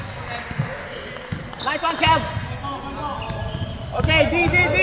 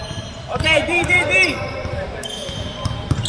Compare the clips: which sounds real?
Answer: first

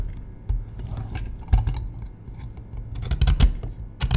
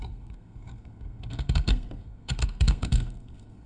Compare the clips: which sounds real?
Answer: first